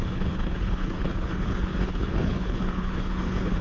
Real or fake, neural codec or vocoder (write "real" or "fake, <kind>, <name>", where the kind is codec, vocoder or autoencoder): fake, codec, HILCodec